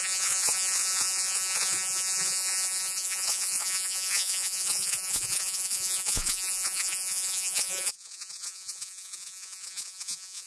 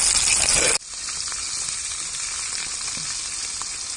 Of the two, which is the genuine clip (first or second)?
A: second